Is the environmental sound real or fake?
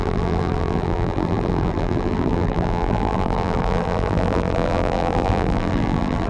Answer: fake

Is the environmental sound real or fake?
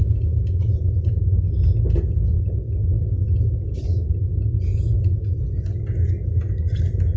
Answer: real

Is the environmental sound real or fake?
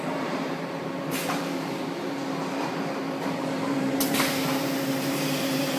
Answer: fake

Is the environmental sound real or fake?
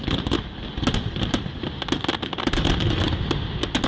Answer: real